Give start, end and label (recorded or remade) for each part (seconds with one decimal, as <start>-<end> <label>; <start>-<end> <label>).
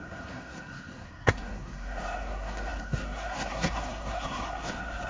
0.0-5.1 remade